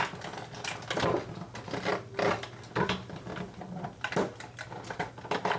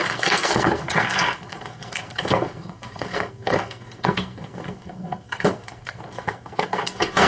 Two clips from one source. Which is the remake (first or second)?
second